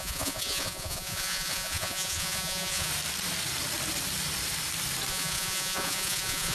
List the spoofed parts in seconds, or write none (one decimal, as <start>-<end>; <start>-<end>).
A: 0.0-2.9; 5.1-6.5

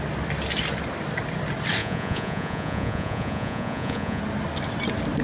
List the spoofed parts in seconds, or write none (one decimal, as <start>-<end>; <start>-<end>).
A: 1.8-4.2

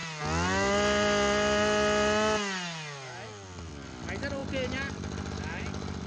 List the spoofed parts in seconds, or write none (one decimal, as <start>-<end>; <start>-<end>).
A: none

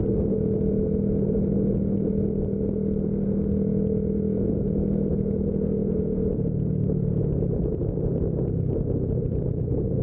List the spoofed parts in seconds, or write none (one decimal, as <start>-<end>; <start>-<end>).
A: 5.8-6.5

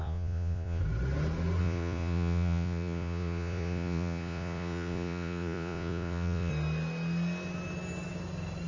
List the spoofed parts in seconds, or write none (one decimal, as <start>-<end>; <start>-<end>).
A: 0.0-0.8; 1.6-6.5

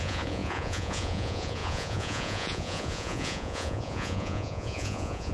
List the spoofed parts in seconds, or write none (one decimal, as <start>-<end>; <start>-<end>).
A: 0.0-5.3

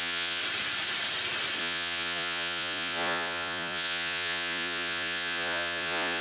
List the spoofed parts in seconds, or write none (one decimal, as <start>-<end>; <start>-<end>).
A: 0.0-0.4; 1.6-6.2